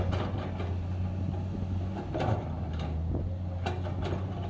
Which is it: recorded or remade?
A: recorded